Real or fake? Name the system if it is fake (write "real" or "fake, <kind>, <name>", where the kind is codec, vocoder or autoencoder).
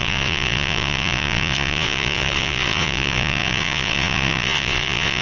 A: fake, vocoder, Vocos